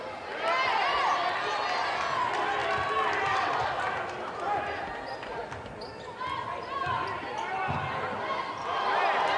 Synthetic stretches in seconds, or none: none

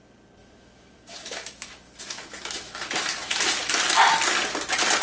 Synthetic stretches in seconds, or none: 0.4-3.4 (autoencoder, DAC-VAE)

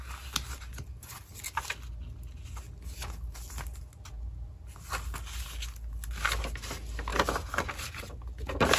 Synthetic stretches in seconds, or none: none

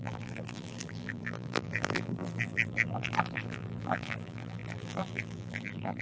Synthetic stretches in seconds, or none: 0.0-6.0 (vocoder, BigVGAN v2)

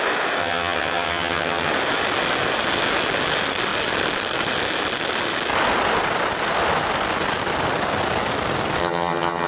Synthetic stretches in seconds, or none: 0.4-1.7 (vocoder, HiFi-GAN); 8.8-9.5

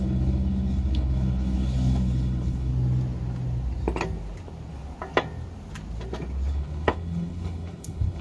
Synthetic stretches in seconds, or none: 0.0-2.7 (codec, HILCodec); 6.5-8.2